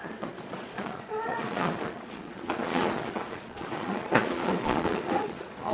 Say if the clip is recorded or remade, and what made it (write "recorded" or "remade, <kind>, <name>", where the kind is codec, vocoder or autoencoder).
remade, vocoder, Vocos